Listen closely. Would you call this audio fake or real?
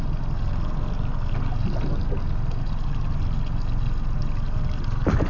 real